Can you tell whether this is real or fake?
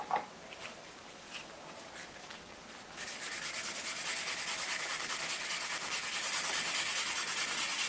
real